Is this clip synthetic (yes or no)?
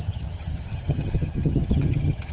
yes